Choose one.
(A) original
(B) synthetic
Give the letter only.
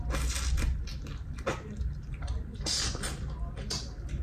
A